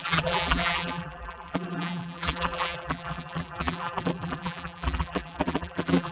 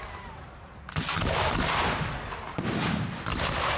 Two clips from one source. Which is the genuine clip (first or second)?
second